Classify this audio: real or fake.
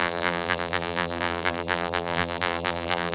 fake